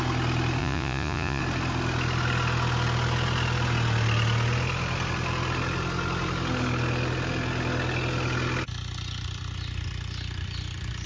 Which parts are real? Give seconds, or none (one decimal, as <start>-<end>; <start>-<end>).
0.0-0.6; 1.4-11.1